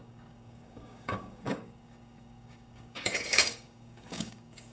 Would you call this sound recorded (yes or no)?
no